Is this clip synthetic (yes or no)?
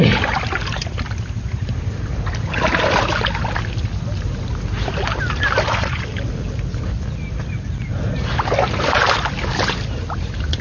no